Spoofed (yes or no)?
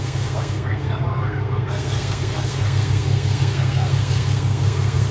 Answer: yes